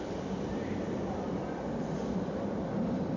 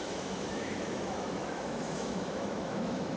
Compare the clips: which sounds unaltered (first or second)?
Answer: first